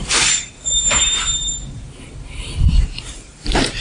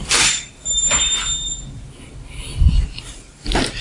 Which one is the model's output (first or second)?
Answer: first